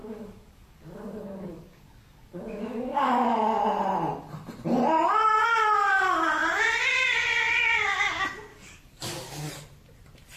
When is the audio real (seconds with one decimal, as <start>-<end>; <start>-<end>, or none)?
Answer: 3.6-8.5; 9.5-10.4